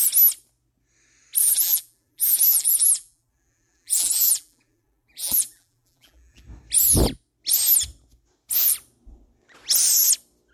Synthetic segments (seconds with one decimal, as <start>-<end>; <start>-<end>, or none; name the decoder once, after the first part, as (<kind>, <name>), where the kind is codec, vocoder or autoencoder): 1.4-6.4 (vocoder, BigVGAN v2)